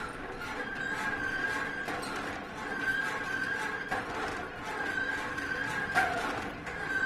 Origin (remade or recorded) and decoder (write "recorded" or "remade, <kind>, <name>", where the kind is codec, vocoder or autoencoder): recorded